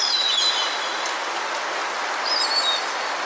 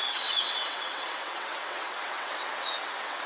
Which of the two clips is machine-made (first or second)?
second